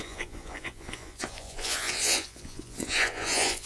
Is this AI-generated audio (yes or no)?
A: yes